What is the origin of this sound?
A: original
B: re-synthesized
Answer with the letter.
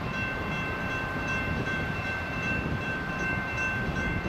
B